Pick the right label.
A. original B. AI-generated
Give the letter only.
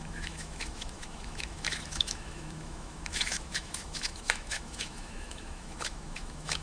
B